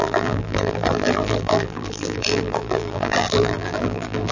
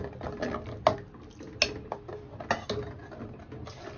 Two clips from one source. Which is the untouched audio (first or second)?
second